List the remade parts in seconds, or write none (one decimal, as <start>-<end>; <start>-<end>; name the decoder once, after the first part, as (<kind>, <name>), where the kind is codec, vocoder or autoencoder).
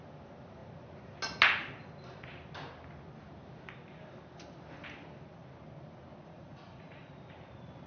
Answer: 6.2-7.1 (vocoder, Vocos)